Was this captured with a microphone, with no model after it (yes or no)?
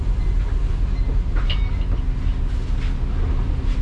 yes